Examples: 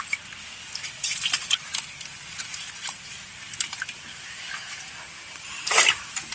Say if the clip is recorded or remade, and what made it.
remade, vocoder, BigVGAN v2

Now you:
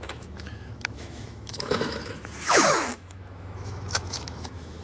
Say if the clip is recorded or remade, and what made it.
remade, autoencoder, DAC-VAE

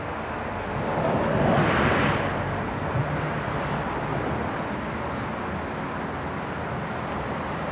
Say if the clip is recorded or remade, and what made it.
recorded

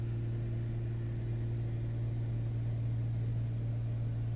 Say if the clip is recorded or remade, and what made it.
recorded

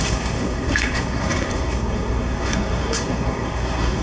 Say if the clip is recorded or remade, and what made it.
remade, codec, SNAC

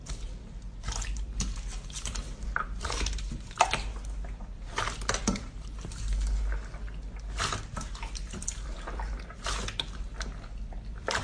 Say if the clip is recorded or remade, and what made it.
recorded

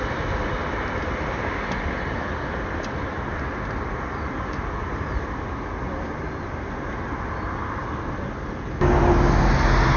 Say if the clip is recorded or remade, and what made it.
recorded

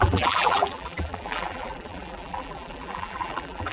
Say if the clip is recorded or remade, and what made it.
remade, vocoder, BigVGAN v2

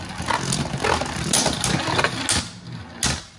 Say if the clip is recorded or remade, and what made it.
recorded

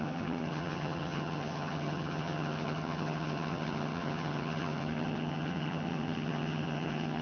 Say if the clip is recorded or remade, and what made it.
remade, vocoder, HiFi-GAN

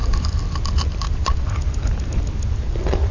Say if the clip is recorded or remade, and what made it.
recorded